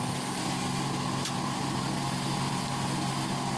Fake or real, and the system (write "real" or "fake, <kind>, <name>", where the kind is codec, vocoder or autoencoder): real